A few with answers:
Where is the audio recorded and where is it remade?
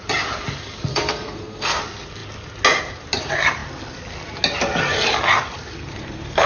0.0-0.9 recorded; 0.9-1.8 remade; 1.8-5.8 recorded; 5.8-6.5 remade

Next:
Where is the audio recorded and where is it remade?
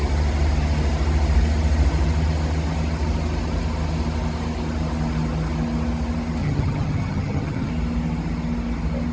0.0-6.4 recorded; 6.4-7.7 remade; 7.7-9.1 recorded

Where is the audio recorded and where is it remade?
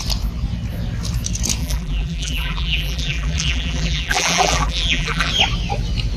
0.0-1.6 recorded; 1.6-5.3 remade; 5.3-6.2 recorded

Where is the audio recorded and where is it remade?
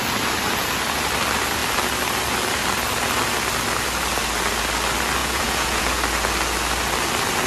0.0-5.2 recorded; 5.2-5.8 remade; 5.8-7.5 recorded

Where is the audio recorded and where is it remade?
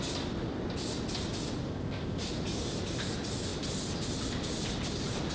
0.0-1.7 recorded; 1.7-2.2 remade; 2.2-5.3 recorded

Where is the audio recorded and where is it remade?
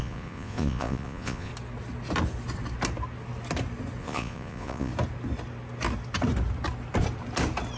0.0-1.5 remade; 1.5-4.0 recorded; 4.0-4.9 remade; 4.9-7.8 recorded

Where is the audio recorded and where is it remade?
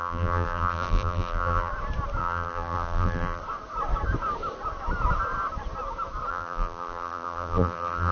0.0-1.7 remade; 1.7-2.2 recorded; 2.2-3.4 remade; 3.4-6.3 recorded; 6.3-8.1 remade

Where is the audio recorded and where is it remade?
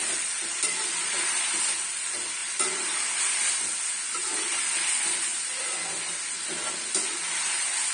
0.0-1.6 remade; 1.6-2.4 recorded; 2.4-3.2 remade; 3.2-7.9 recorded